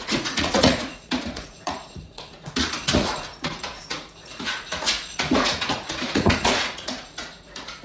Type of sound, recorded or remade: remade